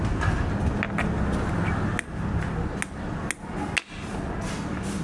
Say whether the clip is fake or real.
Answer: real